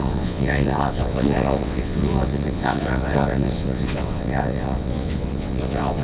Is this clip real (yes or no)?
no